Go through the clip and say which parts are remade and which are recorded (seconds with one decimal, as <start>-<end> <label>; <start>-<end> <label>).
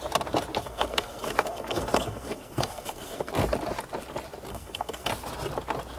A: 0.0-0.6 recorded; 0.6-3.3 remade; 3.3-4.5 recorded; 4.5-5.1 remade; 5.1-6.0 recorded